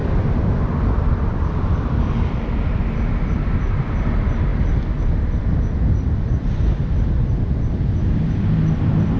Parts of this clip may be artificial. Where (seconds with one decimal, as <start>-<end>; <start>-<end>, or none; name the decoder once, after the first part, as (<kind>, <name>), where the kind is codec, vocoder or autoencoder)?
0.0-9.2 (vocoder, BigVGAN v2)